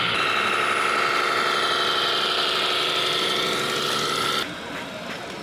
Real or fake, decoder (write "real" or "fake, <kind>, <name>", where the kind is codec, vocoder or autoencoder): real